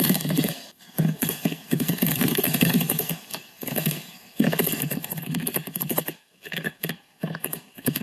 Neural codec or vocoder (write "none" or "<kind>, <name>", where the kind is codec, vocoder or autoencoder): codec, SNAC